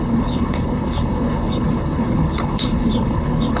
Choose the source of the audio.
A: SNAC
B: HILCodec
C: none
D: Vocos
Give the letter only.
B